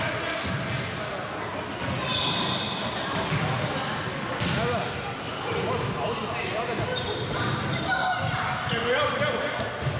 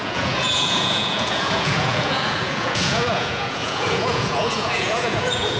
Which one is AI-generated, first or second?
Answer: second